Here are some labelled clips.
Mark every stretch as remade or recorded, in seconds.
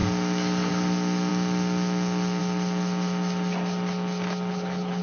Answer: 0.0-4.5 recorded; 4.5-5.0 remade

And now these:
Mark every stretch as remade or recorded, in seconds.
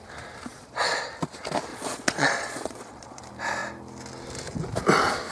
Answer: 0.0-0.5 recorded; 0.5-1.1 remade; 1.1-1.7 recorded; 1.7-3.2 remade; 3.2-5.3 recorded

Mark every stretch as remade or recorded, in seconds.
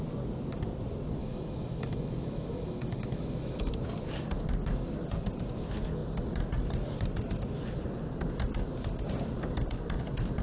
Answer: 0.0-1.2 recorded; 1.2-3.7 remade; 3.7-10.4 recorded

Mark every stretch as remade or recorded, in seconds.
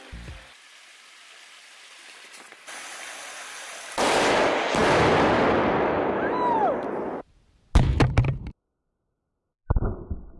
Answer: 0.0-4.8 recorded; 4.8-9.5 remade; 9.5-10.4 recorded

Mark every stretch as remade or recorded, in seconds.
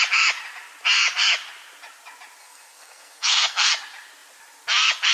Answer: 0.0-2.4 recorded; 2.4-3.7 remade; 3.7-5.1 recorded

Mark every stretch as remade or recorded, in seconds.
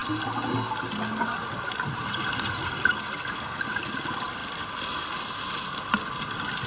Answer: 0.0-6.7 recorded